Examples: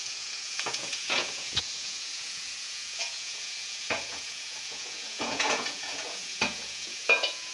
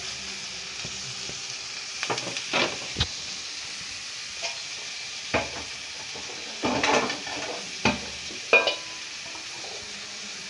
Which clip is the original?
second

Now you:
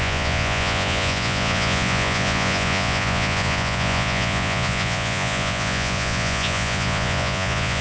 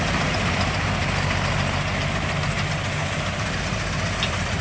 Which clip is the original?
second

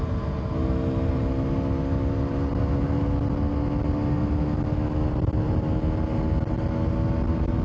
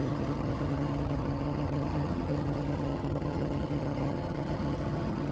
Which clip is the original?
first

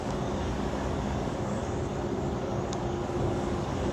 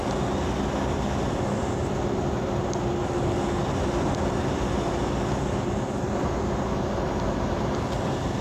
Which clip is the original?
second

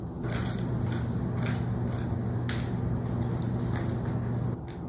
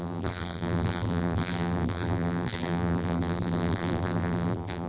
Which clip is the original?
first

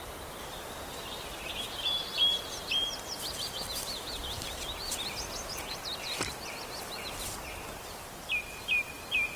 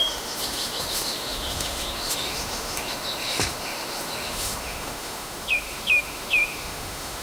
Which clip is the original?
first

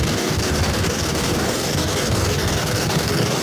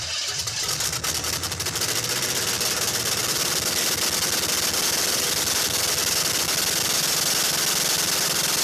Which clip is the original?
second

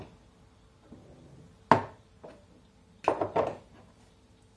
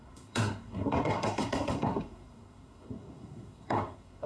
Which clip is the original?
first